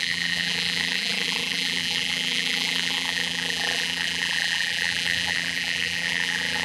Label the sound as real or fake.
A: fake